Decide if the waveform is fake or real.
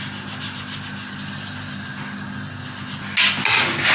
real